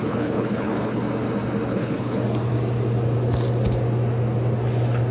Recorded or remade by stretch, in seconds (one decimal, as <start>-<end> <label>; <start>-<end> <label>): 0.0-1.0 remade; 1.0-1.7 recorded; 1.7-2.2 remade; 2.2-5.1 recorded